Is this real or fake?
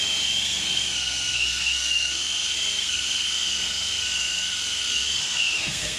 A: fake